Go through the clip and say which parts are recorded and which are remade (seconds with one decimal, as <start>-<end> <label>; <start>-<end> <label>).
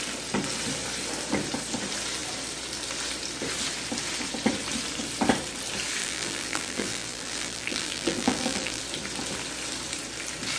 0.0-6.0 recorded; 6.0-8.8 remade; 8.8-10.6 recorded